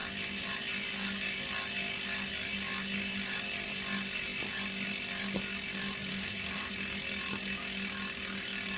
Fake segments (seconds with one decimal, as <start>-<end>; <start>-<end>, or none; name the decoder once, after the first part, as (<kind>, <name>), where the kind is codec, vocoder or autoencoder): 6.1-6.7 (codec, SNAC)